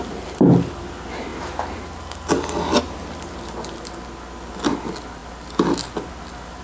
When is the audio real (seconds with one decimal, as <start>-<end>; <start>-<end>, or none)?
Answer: 0.0-6.6

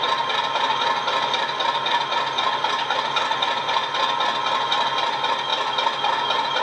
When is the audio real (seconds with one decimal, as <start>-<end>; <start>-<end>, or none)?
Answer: 0.0-6.6

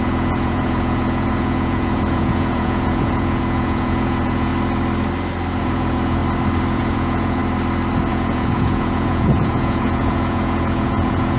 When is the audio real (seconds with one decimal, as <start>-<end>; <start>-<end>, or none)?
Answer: 4.5-5.6; 6.2-6.7; 7.4-8.1

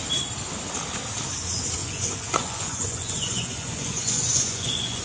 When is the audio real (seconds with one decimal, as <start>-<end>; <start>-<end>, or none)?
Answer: 0.0-1.8